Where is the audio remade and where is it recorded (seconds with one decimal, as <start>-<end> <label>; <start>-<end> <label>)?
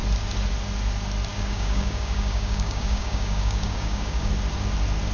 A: 0.0-1.3 recorded; 1.3-4.3 remade; 4.3-5.1 recorded